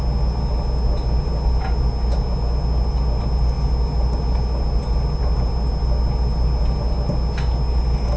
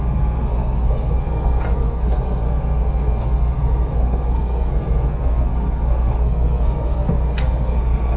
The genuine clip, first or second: first